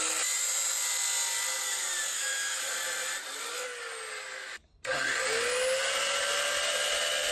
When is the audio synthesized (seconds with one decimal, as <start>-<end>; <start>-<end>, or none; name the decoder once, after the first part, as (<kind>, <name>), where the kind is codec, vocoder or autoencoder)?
2.1-2.6 (autoencoder, DAC-VAE)